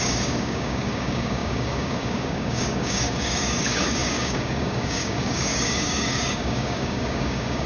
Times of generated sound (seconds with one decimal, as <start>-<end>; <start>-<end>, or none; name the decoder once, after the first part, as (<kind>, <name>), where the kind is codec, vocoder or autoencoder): 0.0-7.7 (codec, DAC)